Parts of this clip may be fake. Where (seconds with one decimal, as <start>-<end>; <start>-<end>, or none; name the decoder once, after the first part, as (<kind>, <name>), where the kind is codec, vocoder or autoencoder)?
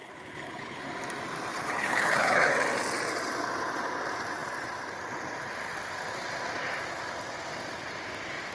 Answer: 0.0-0.8 (codec, HILCodec); 1.5-2.5